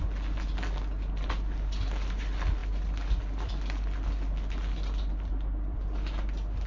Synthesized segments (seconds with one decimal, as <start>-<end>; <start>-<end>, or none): none

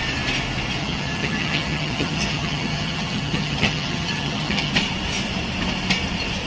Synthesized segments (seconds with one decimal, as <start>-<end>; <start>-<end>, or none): 0.8-4.7

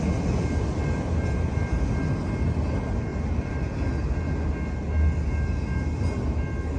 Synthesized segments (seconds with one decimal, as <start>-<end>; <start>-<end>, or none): 3.1-3.9

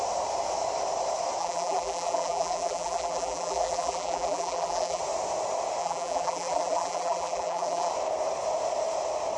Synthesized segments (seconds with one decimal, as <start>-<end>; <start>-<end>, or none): 1.4-5.0; 5.8-7.9

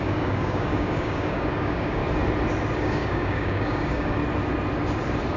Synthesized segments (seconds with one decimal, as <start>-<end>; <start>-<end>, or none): 0.0-2.0; 2.8-4.2

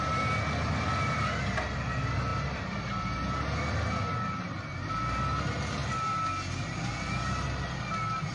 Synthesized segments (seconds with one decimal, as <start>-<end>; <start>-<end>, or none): none

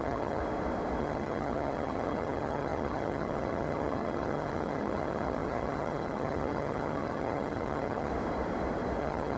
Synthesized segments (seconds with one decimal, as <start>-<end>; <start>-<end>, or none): 0.0-0.4; 1.0-8.1; 9.0-9.4